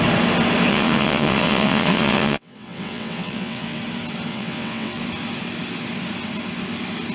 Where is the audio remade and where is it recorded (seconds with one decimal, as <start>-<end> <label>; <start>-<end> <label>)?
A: 0.0-0.7 recorded; 0.7-3.8 remade; 3.8-4.3 recorded; 4.3-5.0 remade; 5.0-7.1 recorded